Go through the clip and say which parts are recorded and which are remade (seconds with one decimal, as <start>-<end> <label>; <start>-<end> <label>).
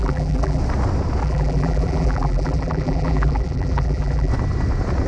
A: 0.0-0.6 remade; 0.6-1.2 recorded; 1.2-4.3 remade; 4.3-5.1 recorded